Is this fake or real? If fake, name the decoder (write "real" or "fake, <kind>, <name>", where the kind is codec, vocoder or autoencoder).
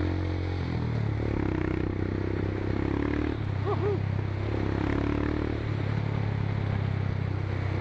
real